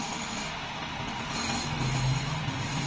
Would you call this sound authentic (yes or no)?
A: yes